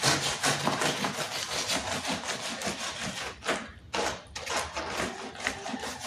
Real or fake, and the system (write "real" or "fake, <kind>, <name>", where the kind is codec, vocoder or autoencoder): real